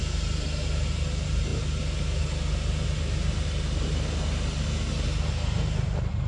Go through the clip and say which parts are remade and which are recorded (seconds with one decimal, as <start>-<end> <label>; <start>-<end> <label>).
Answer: 0.0-6.3 recorded